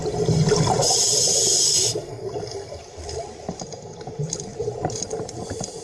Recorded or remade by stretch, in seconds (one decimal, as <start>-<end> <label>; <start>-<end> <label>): 0.0-4.5 recorded; 4.5-5.0 remade; 5.0-5.8 recorded